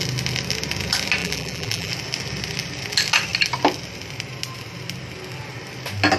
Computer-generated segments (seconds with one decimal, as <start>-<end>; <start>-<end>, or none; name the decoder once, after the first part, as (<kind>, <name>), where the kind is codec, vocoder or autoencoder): 1.2-1.9 (vocoder, BigVGAN v2)

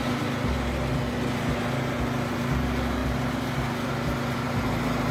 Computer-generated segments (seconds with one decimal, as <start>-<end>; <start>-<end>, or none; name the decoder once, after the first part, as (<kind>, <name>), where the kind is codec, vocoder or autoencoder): none